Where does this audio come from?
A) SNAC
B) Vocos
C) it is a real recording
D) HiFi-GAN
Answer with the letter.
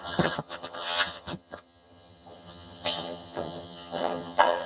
D